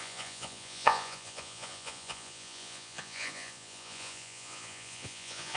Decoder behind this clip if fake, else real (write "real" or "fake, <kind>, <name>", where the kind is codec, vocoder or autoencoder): fake, vocoder, Vocos